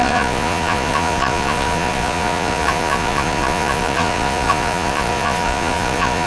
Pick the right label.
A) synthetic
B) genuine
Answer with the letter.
A